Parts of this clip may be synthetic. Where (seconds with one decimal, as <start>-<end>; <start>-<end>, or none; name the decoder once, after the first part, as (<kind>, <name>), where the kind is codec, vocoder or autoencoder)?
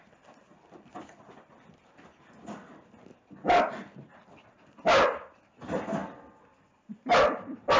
none